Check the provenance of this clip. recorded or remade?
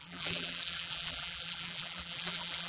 remade